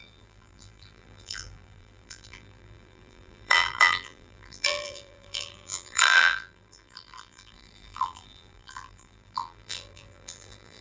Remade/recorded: remade